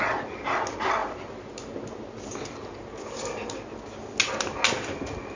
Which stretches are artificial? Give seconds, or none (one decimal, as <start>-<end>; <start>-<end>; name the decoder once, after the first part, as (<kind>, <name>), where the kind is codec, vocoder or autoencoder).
none